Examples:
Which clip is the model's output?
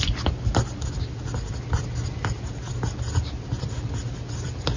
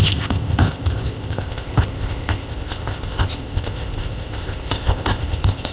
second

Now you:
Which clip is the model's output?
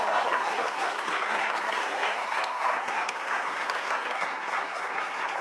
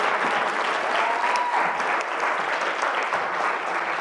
first